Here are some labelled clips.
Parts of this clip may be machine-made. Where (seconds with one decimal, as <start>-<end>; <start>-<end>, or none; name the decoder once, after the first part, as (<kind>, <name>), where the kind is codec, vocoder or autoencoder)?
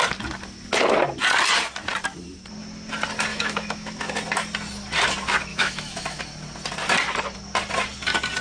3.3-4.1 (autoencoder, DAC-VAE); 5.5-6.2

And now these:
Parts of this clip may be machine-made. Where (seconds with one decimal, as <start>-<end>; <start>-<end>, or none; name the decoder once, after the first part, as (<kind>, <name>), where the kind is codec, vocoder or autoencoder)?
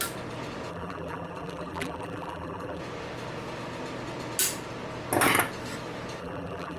0.7-2.8 (vocoder, BigVGAN v2); 6.2-6.8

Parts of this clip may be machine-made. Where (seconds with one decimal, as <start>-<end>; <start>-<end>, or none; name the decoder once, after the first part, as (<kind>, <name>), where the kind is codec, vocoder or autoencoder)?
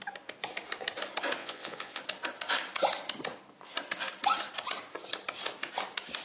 1.4-2.0 (vocoder, Vocos)